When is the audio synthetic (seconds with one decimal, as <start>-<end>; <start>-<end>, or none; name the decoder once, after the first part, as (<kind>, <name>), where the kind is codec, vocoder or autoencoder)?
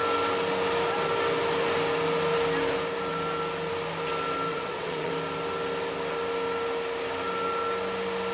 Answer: 4.5-5.1 (vocoder, WaveNeXt)